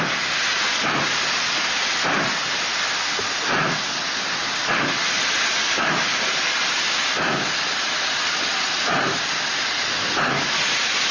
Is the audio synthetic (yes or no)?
no